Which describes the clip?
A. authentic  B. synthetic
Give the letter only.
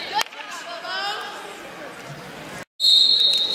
A